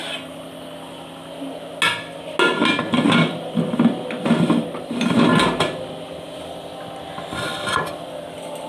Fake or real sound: real